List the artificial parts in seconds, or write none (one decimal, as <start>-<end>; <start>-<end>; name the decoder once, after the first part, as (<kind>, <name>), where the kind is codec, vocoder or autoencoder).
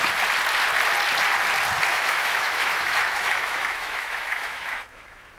1.9-5.4 (autoencoder, DAC-VAE)